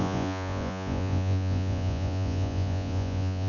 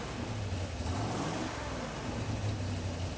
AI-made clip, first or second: first